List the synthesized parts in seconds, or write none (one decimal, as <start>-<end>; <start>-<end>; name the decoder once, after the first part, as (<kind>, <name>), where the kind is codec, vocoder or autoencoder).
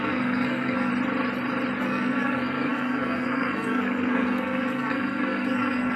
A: 0.0-0.9 (codec, SNAC); 1.8-6.0